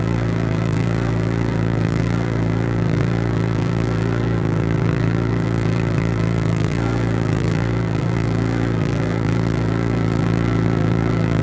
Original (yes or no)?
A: no